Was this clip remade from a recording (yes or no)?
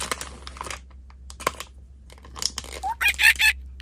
no